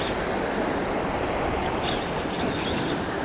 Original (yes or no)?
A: yes